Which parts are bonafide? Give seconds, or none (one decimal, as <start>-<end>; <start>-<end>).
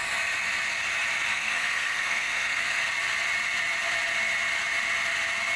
0.0-1.3; 2.8-5.6